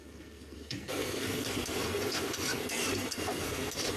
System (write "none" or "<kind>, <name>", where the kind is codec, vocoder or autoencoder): codec, SNAC